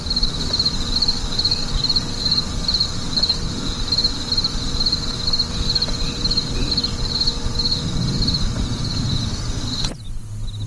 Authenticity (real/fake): real